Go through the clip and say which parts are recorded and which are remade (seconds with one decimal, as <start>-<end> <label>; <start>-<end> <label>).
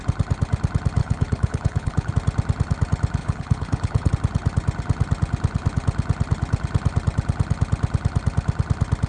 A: 0.0-1.0 recorded; 1.0-2.1 remade; 2.1-3.2 recorded; 3.2-4.1 remade; 4.1-9.1 recorded